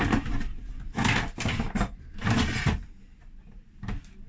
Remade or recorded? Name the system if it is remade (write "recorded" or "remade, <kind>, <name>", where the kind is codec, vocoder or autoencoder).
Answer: recorded